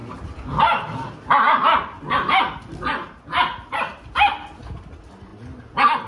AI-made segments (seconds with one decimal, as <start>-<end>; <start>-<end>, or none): none